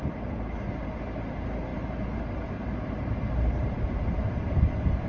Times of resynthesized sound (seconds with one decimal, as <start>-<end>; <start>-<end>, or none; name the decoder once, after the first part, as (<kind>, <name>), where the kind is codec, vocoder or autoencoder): 1.7-5.1 (vocoder, BigVGAN v2)